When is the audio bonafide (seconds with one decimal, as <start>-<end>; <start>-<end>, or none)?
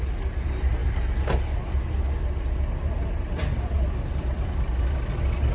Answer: 0.0-5.5